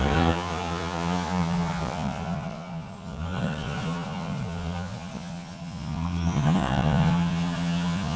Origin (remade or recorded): remade